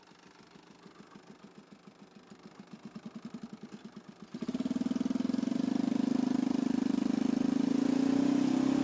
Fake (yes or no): no